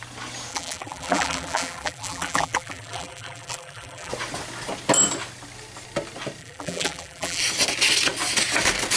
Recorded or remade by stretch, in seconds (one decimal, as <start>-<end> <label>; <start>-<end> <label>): 0.0-0.5 recorded; 0.5-4.1 remade; 4.1-6.4 recorded; 6.4-7.4 remade; 7.4-9.0 recorded